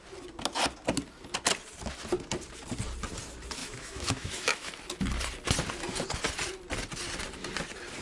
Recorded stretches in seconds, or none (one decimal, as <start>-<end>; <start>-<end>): 0.0-3.6; 4.7-8.0